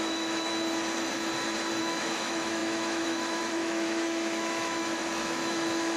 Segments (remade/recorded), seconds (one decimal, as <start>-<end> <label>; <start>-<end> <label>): 0.0-0.5 remade; 0.5-1.8 recorded; 1.8-6.0 remade

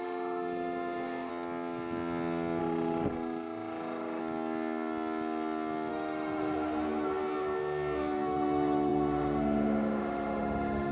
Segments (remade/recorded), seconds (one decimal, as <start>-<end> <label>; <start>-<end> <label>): 0.0-1.3 remade; 1.3-2.6 recorded; 2.6-4.2 remade; 4.2-5.9 recorded; 5.9-10.9 remade

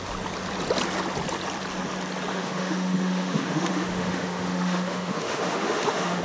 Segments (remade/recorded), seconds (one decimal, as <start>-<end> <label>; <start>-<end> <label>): 0.0-2.3 recorded; 2.3-6.2 remade

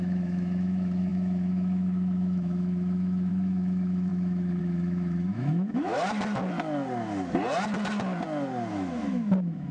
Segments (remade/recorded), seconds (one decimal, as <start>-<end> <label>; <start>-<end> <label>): 0.0-5.9 remade; 5.9-8.7 recorded; 8.7-9.7 remade